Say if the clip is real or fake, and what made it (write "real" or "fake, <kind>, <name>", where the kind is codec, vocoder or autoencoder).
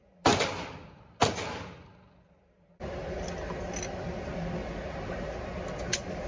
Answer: real